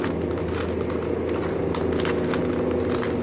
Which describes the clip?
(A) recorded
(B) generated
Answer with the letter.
A